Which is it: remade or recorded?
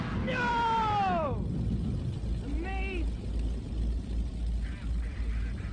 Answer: recorded